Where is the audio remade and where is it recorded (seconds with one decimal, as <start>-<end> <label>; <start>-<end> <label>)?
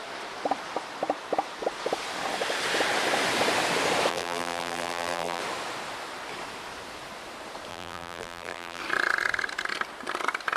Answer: 0.0-4.1 recorded; 4.1-5.4 remade; 5.4-7.7 recorded; 7.7-8.8 remade; 8.8-10.6 recorded